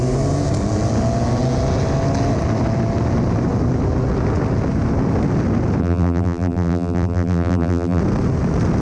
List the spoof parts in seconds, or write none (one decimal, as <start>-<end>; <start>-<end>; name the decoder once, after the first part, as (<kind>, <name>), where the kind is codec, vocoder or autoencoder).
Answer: 5.8-8.0 (vocoder, BigVGAN v2)